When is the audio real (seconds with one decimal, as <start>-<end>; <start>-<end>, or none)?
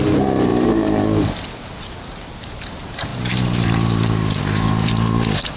none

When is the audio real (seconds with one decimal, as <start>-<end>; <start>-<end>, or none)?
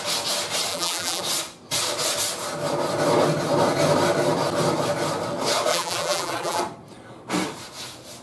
0.0-0.7; 1.2-5.7; 6.6-8.2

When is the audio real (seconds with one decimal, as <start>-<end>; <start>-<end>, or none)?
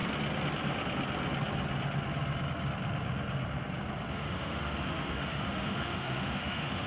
0.0-4.1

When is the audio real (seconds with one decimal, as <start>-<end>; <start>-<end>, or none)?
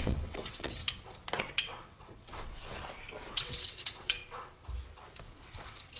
0.8-1.4; 2.6-3.2; 4.2-5.2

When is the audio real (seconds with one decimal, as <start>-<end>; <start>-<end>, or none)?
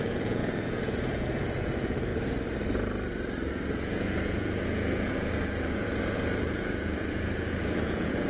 2.1-3.7